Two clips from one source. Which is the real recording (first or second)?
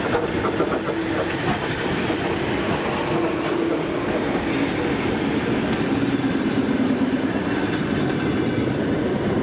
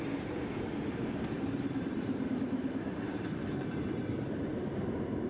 first